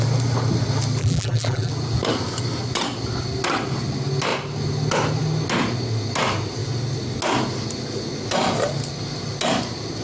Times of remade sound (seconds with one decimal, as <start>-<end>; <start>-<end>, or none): 1.0-1.7